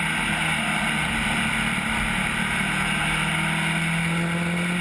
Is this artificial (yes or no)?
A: no